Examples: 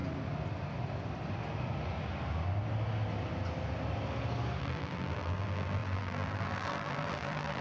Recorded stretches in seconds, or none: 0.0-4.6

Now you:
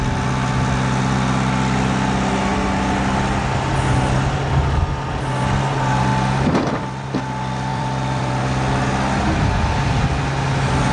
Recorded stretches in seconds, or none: 0.0-7.7; 8.4-10.9

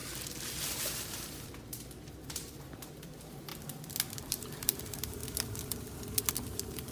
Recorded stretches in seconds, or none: 0.0-0.5; 1.5-2.2; 3.5-4.2; 5.2-6.3